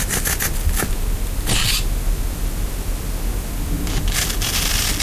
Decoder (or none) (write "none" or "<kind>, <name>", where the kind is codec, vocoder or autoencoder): none